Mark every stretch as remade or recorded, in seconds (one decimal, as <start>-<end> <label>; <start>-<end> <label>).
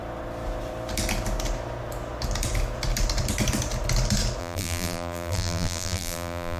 0.0-4.4 recorded; 4.4-6.6 remade